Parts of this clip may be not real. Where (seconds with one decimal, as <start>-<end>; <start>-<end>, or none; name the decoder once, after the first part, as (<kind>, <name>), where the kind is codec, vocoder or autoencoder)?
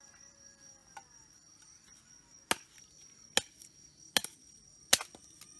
none